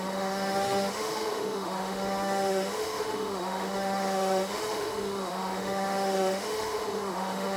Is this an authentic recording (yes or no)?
no